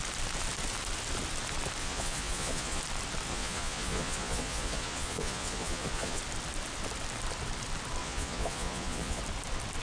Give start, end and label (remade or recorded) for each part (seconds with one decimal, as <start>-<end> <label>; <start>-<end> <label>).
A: 0.0-1.8 recorded; 1.8-2.8 remade; 2.8-3.3 recorded; 3.3-6.2 remade; 6.2-8.0 recorded; 8.0-9.2 remade; 9.2-9.8 recorded